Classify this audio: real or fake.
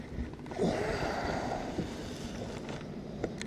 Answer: real